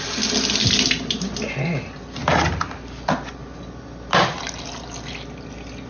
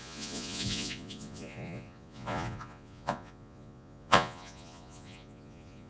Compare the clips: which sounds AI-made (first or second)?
second